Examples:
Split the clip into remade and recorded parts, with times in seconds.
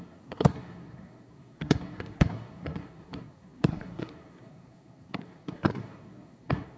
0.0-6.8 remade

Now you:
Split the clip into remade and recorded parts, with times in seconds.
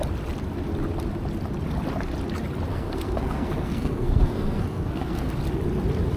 0.0-2.7 recorded; 2.7-5.3 remade; 5.3-6.2 recorded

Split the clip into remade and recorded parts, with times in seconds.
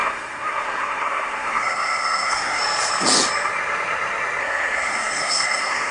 0.0-2.6 remade; 2.6-4.4 recorded; 4.4-5.9 remade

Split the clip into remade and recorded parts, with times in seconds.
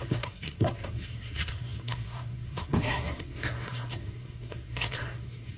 0.0-5.6 remade